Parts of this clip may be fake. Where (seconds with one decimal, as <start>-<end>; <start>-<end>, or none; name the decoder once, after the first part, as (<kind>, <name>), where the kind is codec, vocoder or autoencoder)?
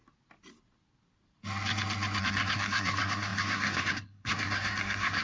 2.2-5.2 (codec, SNAC)